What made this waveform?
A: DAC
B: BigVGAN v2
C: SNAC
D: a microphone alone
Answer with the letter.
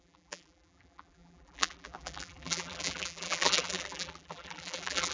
B